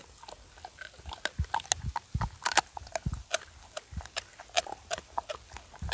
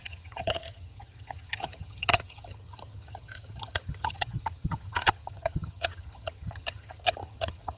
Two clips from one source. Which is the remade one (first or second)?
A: second